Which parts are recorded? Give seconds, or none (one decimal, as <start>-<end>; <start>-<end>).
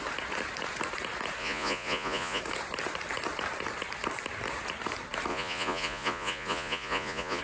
0.0-1.4; 2.4-5.3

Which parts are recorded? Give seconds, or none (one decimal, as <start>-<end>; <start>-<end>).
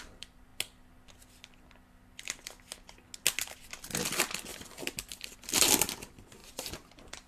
0.5-3.5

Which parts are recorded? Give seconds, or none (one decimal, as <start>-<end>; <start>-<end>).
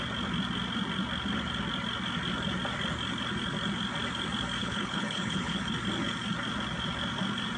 0.0-4.6; 5.6-7.6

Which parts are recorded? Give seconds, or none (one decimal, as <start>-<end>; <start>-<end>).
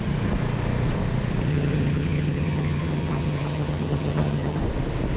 0.0-1.5; 4.6-5.2